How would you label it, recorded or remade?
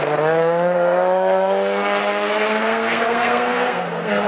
remade